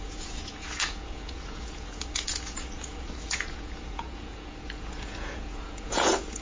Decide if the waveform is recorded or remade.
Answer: remade